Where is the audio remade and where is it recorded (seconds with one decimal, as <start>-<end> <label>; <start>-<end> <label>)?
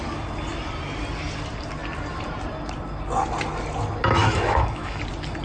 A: 0.0-4.2 recorded; 4.2-5.0 remade; 5.0-5.4 recorded